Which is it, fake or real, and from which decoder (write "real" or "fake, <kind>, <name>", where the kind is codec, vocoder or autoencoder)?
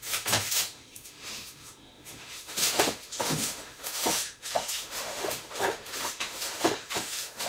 fake, autoencoder, DAC-VAE